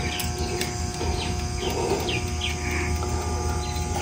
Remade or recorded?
recorded